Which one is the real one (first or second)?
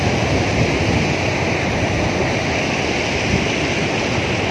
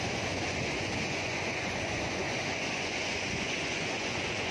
first